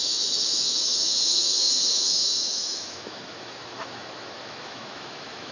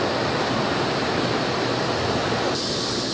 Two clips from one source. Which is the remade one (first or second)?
first